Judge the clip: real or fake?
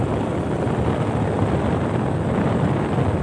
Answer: real